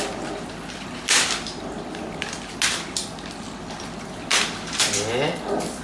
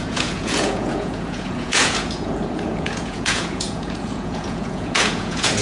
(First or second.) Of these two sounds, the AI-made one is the second